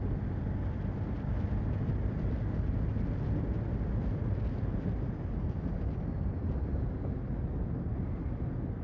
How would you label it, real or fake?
real